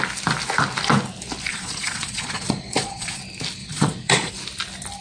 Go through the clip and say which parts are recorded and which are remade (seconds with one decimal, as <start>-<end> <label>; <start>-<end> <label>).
0.0-1.5 recorded; 1.5-3.2 remade; 3.2-3.6 recorded; 3.6-4.3 remade; 4.3-5.0 recorded